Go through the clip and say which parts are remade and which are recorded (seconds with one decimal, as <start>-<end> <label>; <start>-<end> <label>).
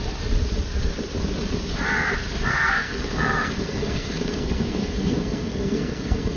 0.0-2.5 recorded; 2.5-6.4 remade